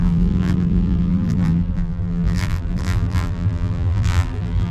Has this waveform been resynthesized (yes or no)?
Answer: yes